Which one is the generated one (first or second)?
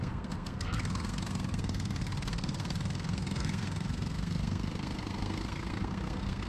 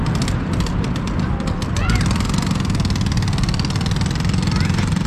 first